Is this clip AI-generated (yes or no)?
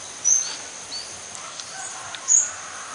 no